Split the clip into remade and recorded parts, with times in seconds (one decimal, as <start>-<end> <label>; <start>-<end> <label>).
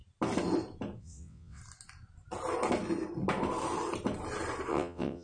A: 0.0-1.0 recorded; 1.0-1.6 remade; 1.6-4.7 recorded; 4.7-5.2 remade